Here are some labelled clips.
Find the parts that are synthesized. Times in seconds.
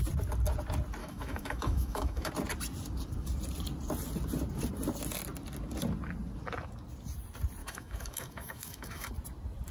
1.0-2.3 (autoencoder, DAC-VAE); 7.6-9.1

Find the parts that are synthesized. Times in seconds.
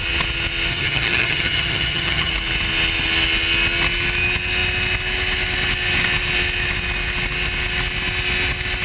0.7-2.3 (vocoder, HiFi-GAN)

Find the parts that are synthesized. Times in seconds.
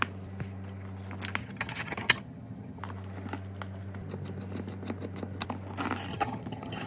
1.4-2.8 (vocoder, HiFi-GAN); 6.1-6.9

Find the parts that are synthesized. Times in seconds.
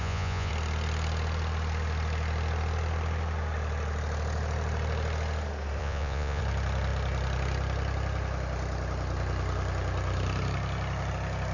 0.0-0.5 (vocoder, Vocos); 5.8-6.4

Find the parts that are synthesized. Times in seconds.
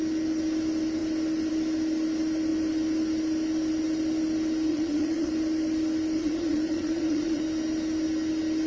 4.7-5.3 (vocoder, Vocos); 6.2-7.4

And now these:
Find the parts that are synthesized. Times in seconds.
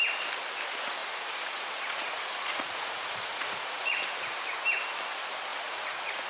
1.0-4.1 (vocoder, Vocos); 5.5-6.3